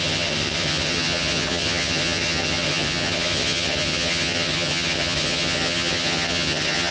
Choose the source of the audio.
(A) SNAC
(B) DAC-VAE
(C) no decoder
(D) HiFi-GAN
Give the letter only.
D